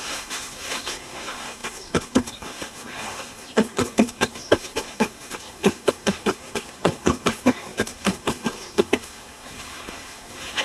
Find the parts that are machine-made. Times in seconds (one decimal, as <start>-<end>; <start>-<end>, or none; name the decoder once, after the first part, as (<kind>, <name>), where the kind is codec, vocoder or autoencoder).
0.0-10.6 (codec, SNAC)

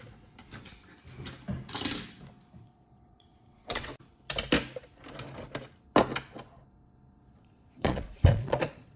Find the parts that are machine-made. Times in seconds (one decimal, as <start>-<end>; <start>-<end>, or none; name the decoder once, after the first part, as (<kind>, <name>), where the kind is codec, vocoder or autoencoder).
0.0-0.4 (vocoder, Vocos); 2.6-3.9; 7.3-9.0

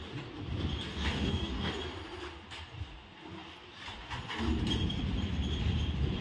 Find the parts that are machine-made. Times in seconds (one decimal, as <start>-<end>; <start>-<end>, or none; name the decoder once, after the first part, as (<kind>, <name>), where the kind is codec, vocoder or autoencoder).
0.9-1.7 (codec, DAC)

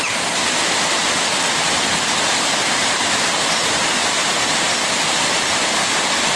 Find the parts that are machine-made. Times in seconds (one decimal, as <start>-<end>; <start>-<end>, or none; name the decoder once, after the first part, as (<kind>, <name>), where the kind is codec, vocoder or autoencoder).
none